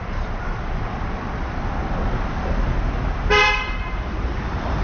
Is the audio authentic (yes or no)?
yes